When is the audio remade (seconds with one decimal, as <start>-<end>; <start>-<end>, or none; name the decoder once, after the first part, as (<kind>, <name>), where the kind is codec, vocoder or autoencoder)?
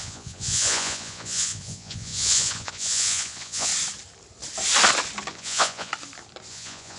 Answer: 0.0-3.7 (vocoder, Vocos); 5.3-5.9; 6.5-7.0